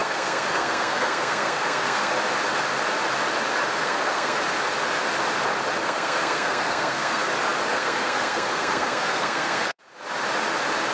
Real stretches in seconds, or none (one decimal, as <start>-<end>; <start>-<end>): 2.1-3.8; 4.4-5.8; 7.3-7.7; 9.8-10.9